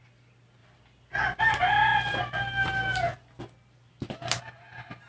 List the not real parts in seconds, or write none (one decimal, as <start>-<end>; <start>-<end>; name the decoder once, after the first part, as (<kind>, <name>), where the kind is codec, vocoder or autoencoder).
none

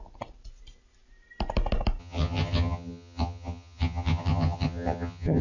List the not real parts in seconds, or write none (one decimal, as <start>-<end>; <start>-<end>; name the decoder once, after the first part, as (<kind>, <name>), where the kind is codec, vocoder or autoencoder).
2.0-5.4 (vocoder, HiFi-GAN)

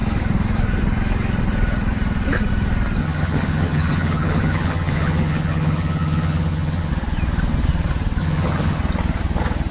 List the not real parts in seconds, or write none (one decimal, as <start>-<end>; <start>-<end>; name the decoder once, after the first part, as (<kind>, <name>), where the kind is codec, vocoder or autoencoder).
3.0-6.9 (vocoder, HiFi-GAN); 8.2-8.8